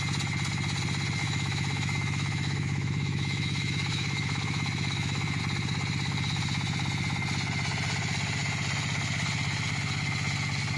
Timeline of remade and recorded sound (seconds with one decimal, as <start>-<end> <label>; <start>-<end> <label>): 0.0-1.2 recorded; 1.2-5.4 remade; 5.4-10.8 recorded